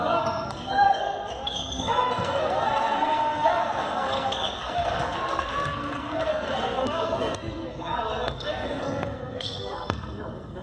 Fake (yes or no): yes